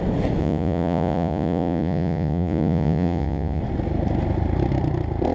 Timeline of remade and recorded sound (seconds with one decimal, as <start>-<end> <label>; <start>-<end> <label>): 0.0-0.4 recorded; 0.4-3.6 remade; 3.6-5.3 recorded